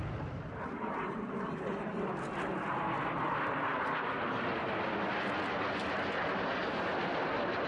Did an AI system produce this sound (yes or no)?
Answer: no